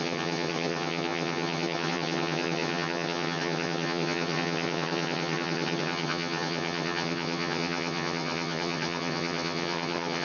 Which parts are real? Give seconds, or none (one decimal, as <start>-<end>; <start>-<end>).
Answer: none

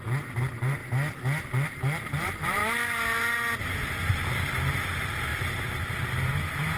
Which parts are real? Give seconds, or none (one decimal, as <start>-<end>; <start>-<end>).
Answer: 0.8-1.5; 2.6-3.6